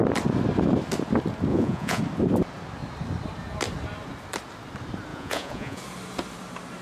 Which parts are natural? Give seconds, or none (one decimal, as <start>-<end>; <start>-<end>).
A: 0.0-1.5; 2.0-5.1; 5.8-6.8